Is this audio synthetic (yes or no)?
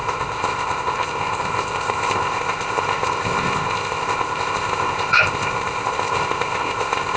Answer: yes